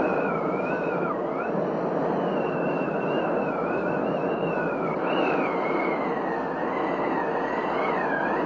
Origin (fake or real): real